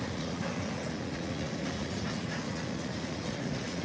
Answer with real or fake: fake